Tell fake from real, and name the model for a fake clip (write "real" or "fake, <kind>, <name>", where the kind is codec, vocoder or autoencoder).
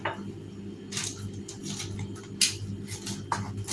real